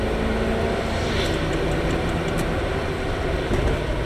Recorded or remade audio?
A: recorded